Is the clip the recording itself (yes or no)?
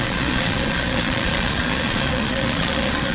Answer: no